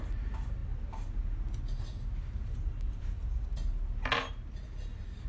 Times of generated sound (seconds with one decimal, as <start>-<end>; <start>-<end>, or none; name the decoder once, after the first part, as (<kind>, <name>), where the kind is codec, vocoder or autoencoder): none